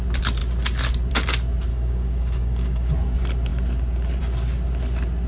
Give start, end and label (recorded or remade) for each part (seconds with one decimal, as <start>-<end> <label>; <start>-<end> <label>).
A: 0.0-1.7 recorded; 1.7-2.9 remade; 2.9-5.3 recorded